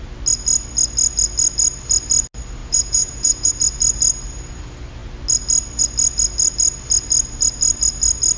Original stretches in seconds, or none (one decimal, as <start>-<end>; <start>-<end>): 0.0-2.6; 3.5-8.4